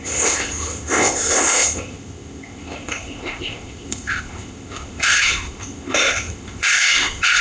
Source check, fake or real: fake